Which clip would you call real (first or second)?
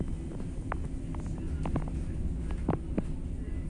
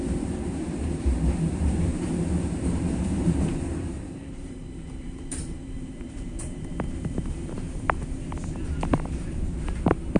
first